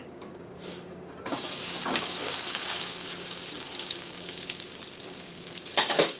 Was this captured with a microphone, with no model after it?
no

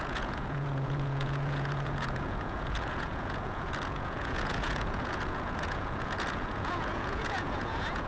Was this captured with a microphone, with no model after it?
no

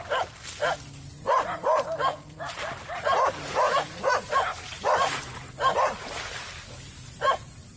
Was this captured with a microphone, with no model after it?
yes